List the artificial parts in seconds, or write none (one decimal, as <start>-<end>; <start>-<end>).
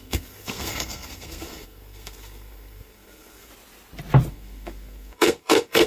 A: 0.0-3.5; 4.3-5.9